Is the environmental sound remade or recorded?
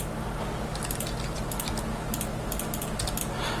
recorded